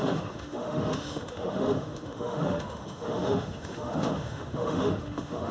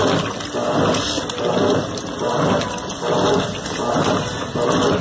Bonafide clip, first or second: second